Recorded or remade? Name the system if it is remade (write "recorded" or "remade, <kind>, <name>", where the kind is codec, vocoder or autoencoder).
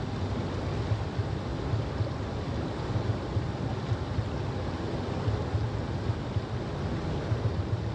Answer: recorded